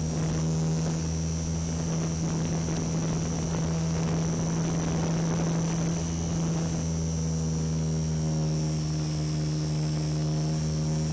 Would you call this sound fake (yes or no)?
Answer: no